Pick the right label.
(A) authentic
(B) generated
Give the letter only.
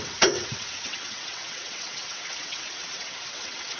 B